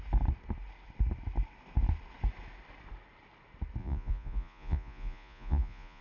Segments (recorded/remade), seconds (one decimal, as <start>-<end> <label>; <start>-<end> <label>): 0.0-3.8 recorded; 3.8-6.0 remade